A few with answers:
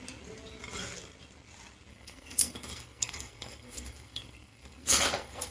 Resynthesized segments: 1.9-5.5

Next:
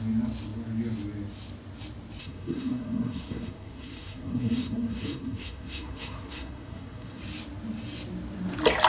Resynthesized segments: 2.2-7.2

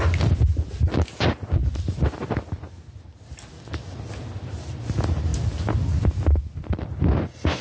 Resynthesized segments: none

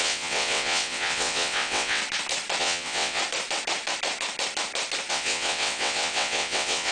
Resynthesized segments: 0.0-2.0; 2.6-3.2; 5.1-6.9

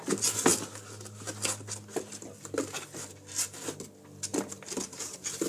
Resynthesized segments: none

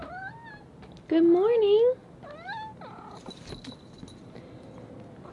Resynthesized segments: none

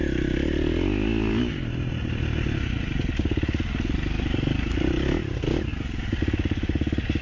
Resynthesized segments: none